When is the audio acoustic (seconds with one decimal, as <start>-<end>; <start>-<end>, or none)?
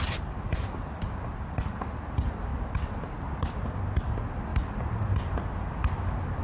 0.0-6.4